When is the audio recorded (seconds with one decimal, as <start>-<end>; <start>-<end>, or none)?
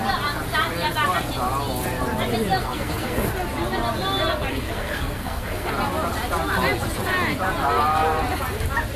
0.0-2.6; 3.3-4.5; 5.7-9.0